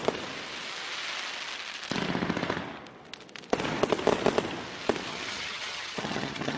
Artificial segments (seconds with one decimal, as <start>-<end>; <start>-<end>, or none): 5.1-6.6